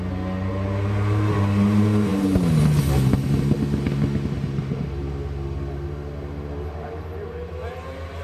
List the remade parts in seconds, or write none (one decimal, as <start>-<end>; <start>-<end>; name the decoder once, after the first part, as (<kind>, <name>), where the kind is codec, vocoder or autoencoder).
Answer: none

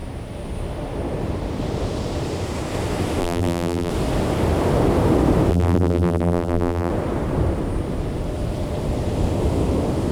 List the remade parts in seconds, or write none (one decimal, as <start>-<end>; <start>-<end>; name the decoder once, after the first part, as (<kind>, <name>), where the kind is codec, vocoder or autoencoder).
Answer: 3.2-3.9 (vocoder, BigVGAN v2); 5.5-6.9

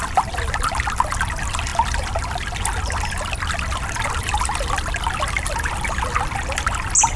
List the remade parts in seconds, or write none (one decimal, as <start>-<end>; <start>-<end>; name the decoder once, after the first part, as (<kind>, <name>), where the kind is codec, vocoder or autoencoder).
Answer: none

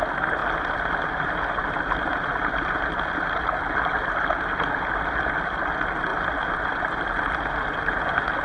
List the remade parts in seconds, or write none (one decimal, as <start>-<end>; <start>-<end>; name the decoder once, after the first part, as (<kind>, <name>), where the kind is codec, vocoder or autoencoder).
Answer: none

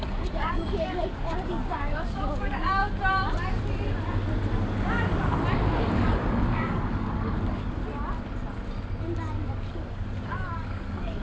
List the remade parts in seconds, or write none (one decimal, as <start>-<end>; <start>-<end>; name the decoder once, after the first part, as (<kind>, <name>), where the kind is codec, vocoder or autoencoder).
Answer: 0.0-2.8 (codec, DAC); 5.8-7.8; 9.4-11.2

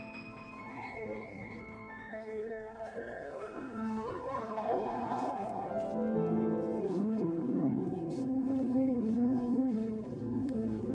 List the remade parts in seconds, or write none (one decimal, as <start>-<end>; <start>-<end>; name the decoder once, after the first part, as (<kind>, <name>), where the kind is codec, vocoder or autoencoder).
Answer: 0.7-1.6 (codec, SNAC); 2.1-5.7; 6.8-10.9